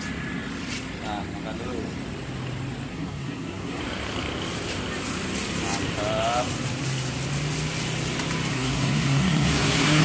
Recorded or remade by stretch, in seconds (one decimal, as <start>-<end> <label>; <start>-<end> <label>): 0.0-2.9 recorded; 2.9-3.8 remade; 3.8-8.5 recorded; 8.5-10.0 remade